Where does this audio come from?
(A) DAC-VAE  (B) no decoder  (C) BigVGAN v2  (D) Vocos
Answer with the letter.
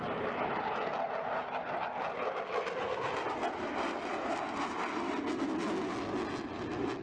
B